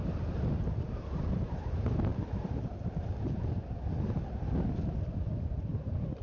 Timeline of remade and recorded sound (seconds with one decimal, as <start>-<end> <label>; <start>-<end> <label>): 0.0-2.1 recorded; 2.1-2.8 remade; 2.8-6.2 recorded